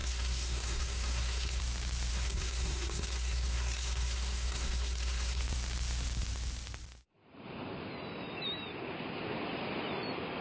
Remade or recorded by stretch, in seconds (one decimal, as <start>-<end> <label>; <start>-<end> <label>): 0.0-1.6 remade; 1.6-2.1 recorded; 2.1-5.4 remade; 5.4-10.4 recorded